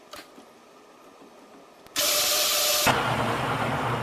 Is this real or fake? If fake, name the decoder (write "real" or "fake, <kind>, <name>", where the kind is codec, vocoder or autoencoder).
real